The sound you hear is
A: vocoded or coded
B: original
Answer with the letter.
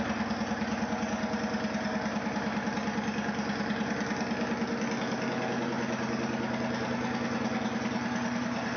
B